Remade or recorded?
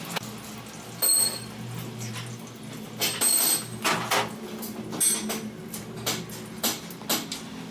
recorded